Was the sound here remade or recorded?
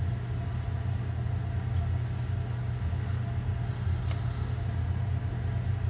recorded